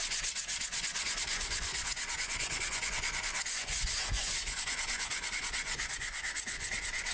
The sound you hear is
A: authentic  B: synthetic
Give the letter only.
B